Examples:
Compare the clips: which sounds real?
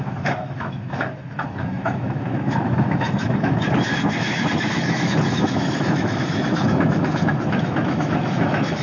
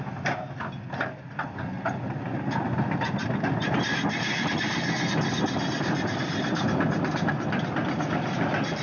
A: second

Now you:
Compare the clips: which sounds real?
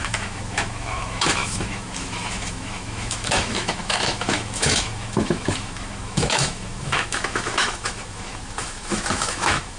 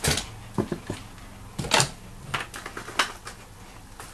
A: second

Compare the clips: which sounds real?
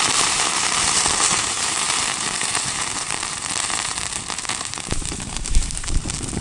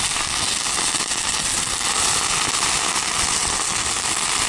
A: second